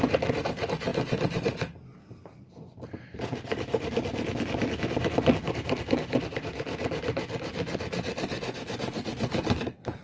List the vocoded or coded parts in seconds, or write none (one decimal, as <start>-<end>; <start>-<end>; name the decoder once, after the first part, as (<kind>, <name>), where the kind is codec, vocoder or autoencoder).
none